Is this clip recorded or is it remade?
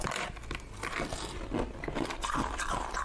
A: recorded